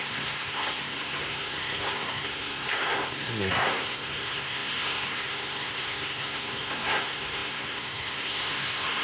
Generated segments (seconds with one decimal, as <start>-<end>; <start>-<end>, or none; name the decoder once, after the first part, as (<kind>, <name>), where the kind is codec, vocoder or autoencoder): 0.0-9.0 (codec, SNAC)